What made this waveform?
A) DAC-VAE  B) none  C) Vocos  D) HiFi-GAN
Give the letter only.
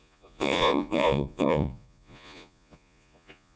C